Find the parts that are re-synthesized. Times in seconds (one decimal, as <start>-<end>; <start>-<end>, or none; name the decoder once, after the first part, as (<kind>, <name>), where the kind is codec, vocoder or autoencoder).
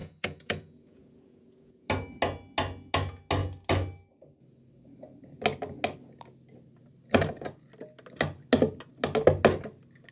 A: 0.0-1.9 (vocoder, Vocos)